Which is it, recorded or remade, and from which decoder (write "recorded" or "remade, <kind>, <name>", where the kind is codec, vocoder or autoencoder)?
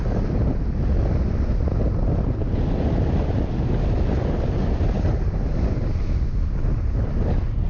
recorded